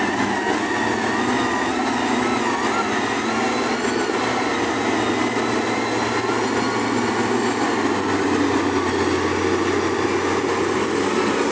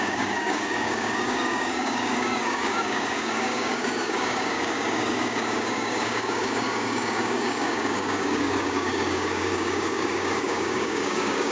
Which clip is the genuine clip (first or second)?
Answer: first